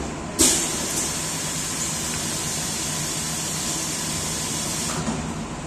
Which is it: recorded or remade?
recorded